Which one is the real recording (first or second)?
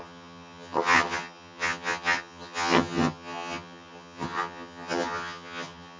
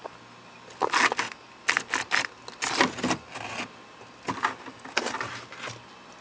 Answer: second